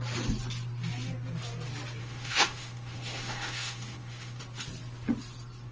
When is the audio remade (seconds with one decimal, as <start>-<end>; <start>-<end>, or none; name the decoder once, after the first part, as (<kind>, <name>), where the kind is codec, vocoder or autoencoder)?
2.0-4.4 (autoencoder, DAC-VAE)